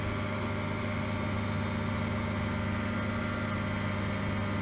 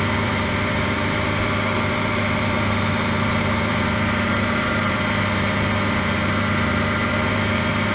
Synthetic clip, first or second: second